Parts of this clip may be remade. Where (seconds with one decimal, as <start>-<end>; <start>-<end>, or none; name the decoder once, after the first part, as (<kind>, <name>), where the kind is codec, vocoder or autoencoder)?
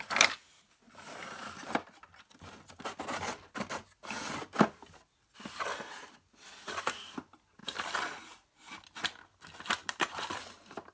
7.6-8.2 (vocoder, BigVGAN v2); 9.8-10.9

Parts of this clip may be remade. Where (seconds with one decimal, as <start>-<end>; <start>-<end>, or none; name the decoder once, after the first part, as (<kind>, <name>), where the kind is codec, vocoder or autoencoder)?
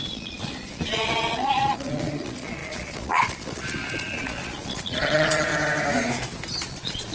0.0-5.5 (vocoder, Vocos); 6.6-7.1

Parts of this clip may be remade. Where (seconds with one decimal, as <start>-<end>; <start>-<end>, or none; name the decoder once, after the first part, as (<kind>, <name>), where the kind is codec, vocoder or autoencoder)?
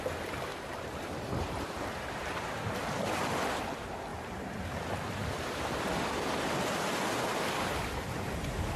0.5-2.3 (vocoder, BigVGAN v2); 4.1-4.6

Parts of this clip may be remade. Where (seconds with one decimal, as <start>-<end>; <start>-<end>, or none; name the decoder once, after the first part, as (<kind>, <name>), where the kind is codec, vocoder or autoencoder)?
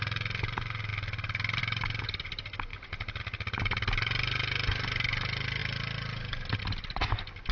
none